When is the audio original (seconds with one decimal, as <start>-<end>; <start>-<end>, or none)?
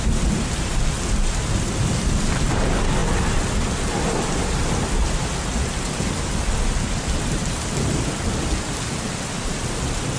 0.0-10.2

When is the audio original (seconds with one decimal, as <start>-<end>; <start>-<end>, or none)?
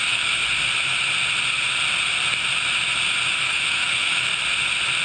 0.4-3.4; 4.3-5.0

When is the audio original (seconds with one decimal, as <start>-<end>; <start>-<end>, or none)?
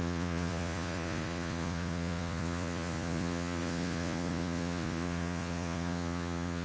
none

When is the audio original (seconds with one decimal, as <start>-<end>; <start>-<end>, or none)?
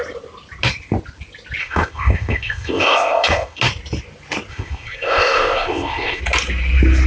0.0-1.6; 3.6-4.5; 6.2-7.1